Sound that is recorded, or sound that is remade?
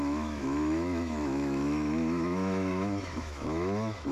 remade